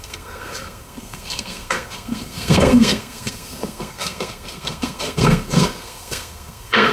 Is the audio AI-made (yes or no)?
yes